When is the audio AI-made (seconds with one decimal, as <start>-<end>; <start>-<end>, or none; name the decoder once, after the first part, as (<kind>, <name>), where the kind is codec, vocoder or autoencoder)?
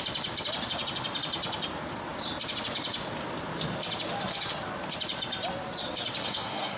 6.2-6.8 (codec, SNAC)